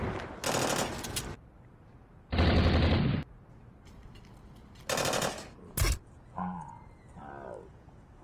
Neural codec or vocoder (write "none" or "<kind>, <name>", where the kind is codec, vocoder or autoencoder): none